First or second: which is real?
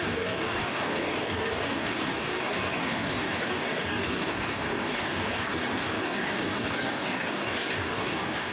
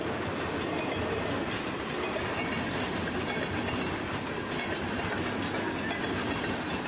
second